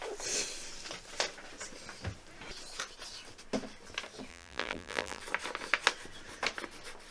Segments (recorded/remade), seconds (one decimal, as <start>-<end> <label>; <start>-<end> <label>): 0.0-4.3 recorded; 4.3-5.2 remade; 5.2-7.1 recorded